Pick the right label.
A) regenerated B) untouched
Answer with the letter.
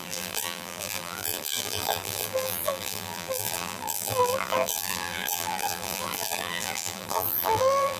A